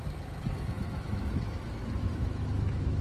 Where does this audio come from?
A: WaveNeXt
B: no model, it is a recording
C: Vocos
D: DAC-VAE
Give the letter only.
D